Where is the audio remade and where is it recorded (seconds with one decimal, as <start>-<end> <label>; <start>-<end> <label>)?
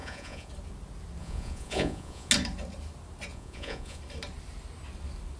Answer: 0.0-0.5 remade; 0.5-1.2 recorded; 1.2-2.3 remade; 2.3-3.3 recorded; 3.3-4.0 remade; 4.0-5.4 recorded